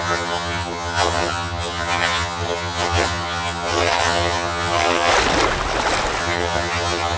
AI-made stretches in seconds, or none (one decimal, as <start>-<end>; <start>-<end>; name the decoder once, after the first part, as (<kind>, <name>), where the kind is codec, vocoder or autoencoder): 0.0-5.1 (vocoder, HiFi-GAN); 6.2-7.2